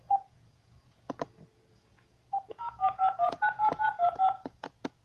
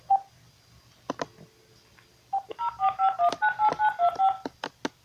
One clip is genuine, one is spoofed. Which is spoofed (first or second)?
first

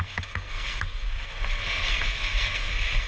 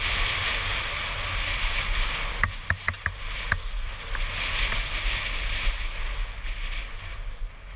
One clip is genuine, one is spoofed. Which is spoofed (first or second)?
first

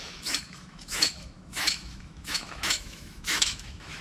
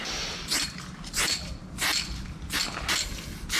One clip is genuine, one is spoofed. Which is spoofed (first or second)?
first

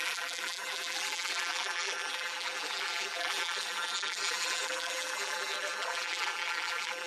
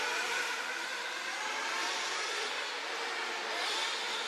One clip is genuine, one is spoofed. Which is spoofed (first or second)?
first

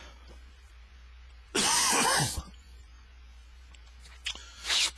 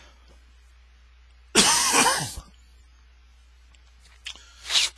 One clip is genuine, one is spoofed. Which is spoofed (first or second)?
first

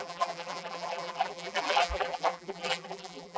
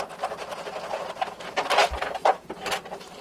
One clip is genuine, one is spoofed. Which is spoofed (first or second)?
first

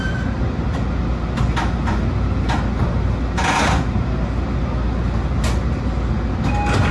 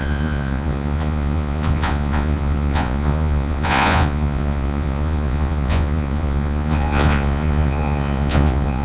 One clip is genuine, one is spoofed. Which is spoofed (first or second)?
second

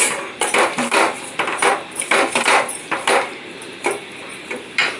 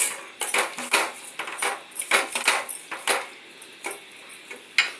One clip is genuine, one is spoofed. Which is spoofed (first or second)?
first